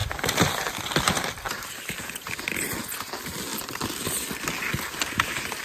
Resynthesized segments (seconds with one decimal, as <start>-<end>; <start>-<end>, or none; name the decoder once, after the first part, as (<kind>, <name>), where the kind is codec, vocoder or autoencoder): 0.0-2.6 (vocoder, BigVGAN v2); 3.5-4.1